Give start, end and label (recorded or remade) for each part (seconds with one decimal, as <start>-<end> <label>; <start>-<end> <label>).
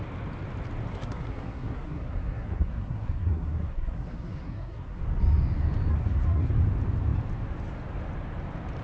0.0-0.9 recorded; 0.9-5.0 remade; 5.0-5.9 recorded; 5.9-6.5 remade; 6.5-8.8 recorded